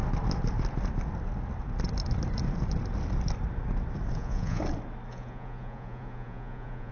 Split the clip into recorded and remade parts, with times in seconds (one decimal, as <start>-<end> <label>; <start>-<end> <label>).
0.0-4.1 recorded; 4.1-4.6 remade; 4.6-5.1 recorded; 5.1-6.9 remade